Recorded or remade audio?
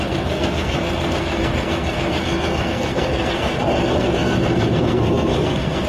remade